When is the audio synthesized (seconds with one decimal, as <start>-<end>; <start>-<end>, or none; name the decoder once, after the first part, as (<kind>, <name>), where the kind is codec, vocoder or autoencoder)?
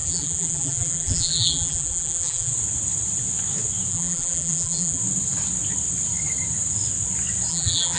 0.0-2.5 (vocoder, BigVGAN v2); 3.9-5.0; 7.5-8.0